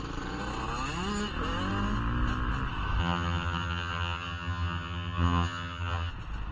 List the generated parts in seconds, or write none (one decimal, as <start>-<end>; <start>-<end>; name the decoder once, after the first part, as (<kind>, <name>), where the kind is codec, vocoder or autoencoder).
3.0-6.1 (vocoder, HiFi-GAN)